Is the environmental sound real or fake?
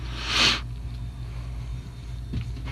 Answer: real